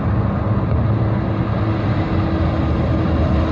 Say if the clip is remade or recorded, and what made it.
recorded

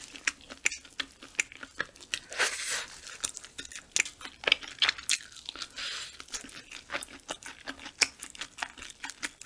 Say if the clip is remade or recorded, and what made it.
recorded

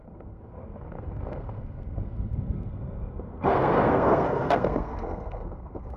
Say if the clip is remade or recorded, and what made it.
remade, codec, SNAC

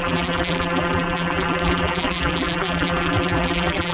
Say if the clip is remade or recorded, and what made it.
remade, vocoder, BigVGAN v2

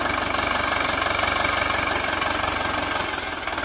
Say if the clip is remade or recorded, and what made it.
recorded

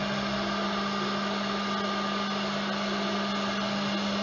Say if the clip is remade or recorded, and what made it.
recorded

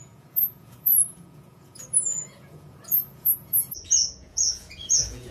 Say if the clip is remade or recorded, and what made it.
remade, vocoder, Vocos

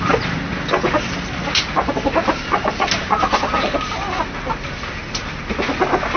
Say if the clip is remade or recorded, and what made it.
recorded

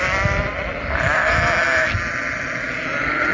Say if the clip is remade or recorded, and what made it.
recorded